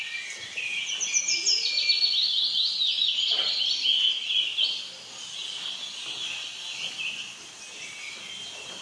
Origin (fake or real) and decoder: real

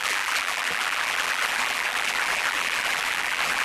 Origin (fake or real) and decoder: fake, vocoder, BigVGAN v2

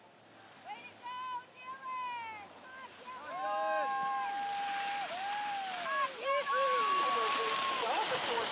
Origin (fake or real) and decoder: real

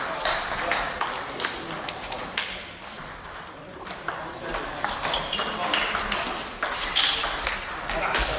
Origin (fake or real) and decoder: real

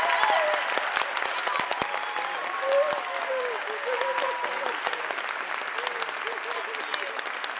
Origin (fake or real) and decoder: real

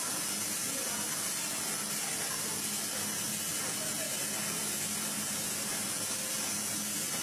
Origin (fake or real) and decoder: real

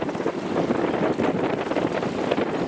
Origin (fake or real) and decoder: real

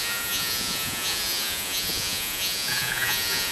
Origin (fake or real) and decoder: fake, vocoder, Vocos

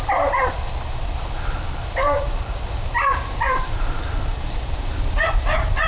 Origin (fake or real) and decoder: real